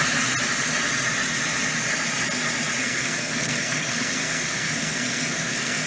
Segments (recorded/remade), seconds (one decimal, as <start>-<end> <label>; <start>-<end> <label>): 0.0-2.8 recorded; 2.8-5.9 remade